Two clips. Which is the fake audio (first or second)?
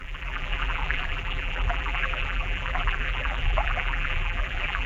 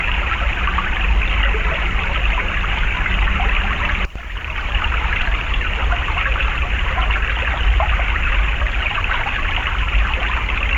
first